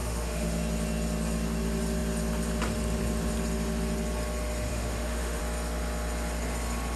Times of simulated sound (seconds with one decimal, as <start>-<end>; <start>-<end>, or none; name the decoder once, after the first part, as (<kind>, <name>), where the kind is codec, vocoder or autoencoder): 0.0-0.6 (autoencoder, DAC-VAE); 4.7-5.4